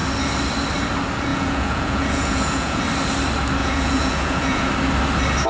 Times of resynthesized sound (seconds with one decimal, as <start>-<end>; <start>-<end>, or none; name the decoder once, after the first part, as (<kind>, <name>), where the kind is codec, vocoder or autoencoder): 1.3-2.8 (vocoder, Vocos); 3.6-4.7